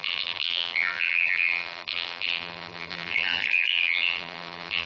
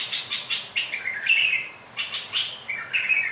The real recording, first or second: second